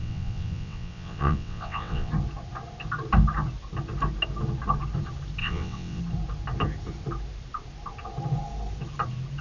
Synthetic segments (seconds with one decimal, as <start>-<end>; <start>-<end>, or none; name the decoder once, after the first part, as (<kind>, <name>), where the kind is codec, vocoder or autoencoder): 0.0-2.1 (vocoder, WaveNeXt); 5.4-6.0